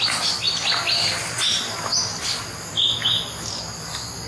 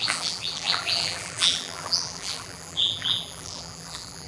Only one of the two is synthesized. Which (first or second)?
second